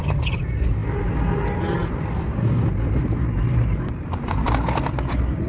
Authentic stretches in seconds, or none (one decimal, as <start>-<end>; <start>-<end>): 0.8-3.9